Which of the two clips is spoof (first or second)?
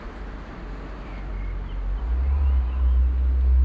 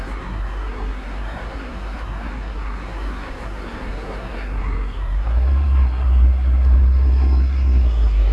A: second